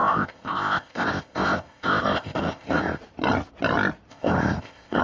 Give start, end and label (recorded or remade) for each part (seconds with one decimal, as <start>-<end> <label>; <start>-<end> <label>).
0.0-3.0 remade; 3.0-4.1 recorded; 4.1-5.0 remade